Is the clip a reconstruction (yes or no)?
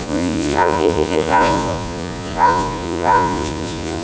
yes